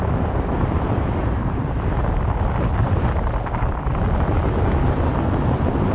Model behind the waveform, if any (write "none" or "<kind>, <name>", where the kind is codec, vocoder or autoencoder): none